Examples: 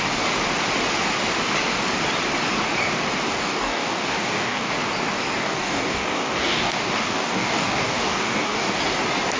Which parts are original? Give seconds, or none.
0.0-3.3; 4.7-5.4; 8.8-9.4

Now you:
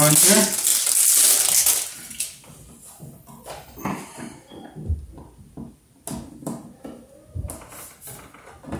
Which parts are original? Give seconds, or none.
0.0-8.8